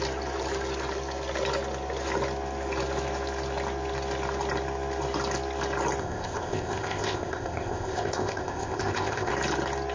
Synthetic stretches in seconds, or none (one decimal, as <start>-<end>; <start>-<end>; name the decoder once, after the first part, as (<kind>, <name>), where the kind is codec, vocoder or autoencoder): 6.0-9.3 (codec, ZipCodec)